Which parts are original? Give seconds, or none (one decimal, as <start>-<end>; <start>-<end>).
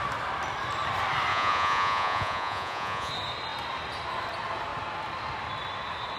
0.0-1.3; 3.1-6.2